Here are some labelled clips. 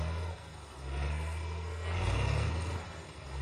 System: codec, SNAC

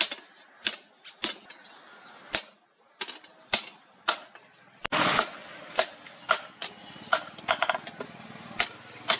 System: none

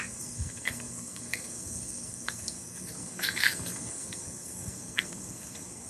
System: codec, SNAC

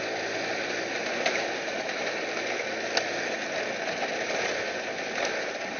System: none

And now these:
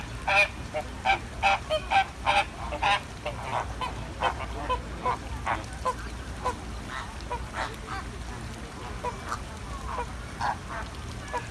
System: none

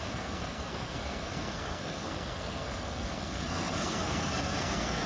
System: codec, SNAC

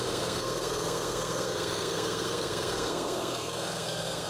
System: codec, SNAC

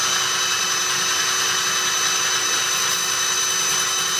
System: none